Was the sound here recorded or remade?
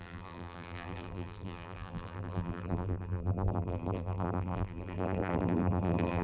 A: remade